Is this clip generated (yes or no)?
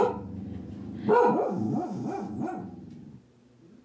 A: no